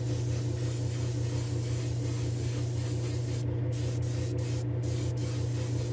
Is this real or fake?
real